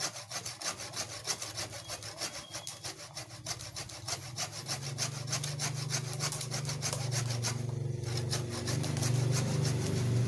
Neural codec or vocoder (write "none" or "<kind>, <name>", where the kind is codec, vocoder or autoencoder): none